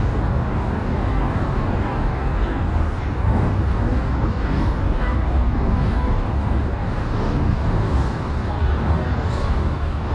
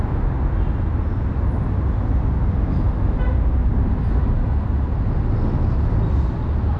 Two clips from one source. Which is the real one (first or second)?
second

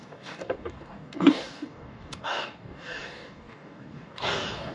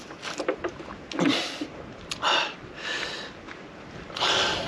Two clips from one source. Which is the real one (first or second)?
second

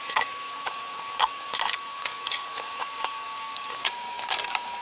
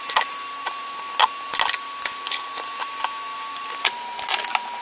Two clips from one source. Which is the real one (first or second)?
second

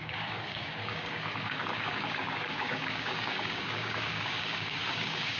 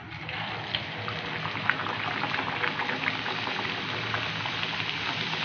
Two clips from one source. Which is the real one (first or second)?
second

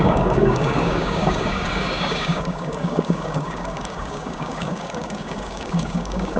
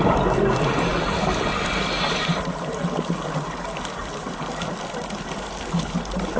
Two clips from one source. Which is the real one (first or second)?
second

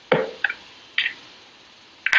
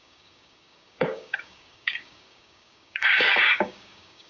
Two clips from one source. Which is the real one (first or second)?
first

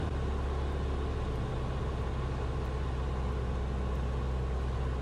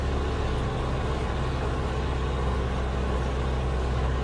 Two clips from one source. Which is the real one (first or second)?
first